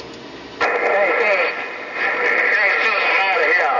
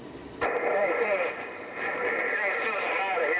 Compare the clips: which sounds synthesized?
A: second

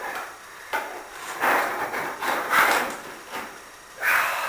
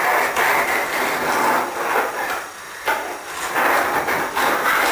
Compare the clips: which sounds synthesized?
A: first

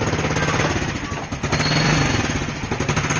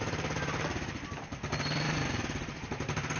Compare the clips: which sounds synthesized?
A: second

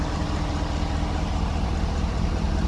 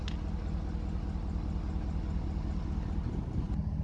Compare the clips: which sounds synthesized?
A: first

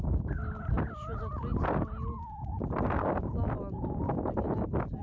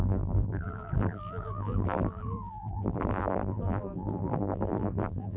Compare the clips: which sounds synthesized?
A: second